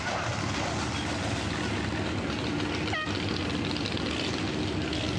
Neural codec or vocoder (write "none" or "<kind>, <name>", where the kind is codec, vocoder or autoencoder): none